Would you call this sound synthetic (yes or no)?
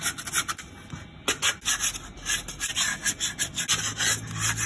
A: no